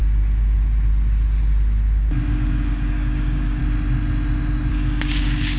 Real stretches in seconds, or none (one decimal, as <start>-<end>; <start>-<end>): 0.0-2.3; 3.6-4.7